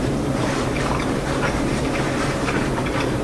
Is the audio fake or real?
fake